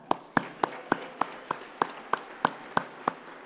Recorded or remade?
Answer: recorded